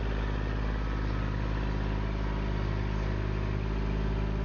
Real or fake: real